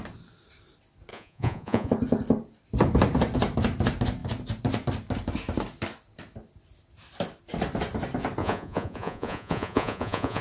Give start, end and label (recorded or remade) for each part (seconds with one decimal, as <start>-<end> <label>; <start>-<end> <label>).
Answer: 0.0-1.1 recorded; 1.1-1.9 remade; 1.9-8.4 recorded; 8.4-10.4 remade

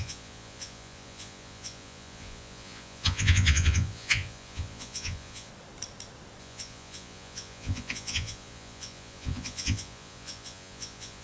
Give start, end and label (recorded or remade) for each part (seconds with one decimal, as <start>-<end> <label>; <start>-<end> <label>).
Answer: 0.0-5.5 remade; 5.5-6.4 recorded; 6.4-11.2 remade

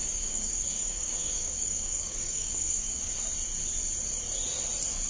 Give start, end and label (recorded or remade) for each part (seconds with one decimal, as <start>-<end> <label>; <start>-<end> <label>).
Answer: 0.0-3.1 remade; 3.1-5.1 recorded

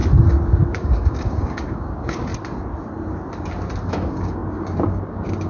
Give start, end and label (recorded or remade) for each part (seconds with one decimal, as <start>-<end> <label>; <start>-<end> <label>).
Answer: 0.0-0.5 recorded; 0.5-2.3 remade; 2.3-3.9 recorded; 3.9-5.5 remade